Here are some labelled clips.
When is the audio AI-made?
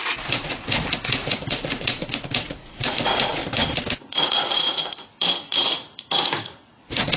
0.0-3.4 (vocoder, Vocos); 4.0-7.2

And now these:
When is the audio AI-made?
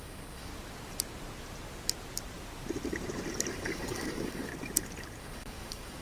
0.0-0.5 (codec, DAC); 3.5-4.5; 5.2-6.0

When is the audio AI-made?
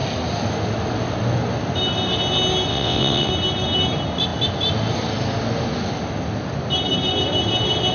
2.7-3.3 (vocoder, WaveNeXt)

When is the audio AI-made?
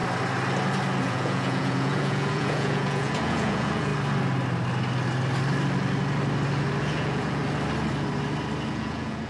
1.0-3.9 (vocoder, Vocos); 6.8-7.4; 8.7-9.3